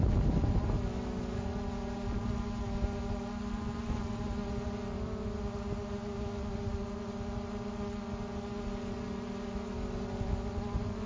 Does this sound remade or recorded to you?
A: recorded